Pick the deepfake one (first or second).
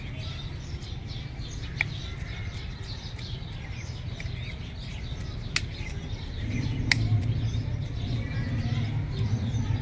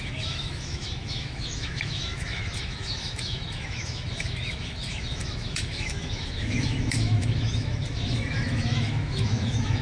second